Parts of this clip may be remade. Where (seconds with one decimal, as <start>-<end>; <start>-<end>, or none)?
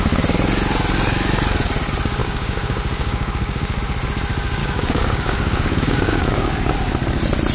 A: 2.2-3.8; 4.6-6.5